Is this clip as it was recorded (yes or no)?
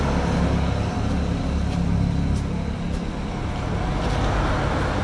yes